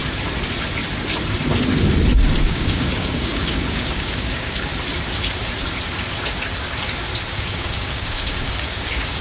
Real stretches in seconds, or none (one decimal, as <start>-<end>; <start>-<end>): 0.0-2.4; 4.7-7.3